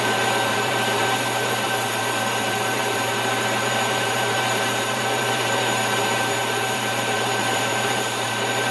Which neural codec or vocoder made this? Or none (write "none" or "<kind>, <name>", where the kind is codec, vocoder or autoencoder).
vocoder, BigVGAN v2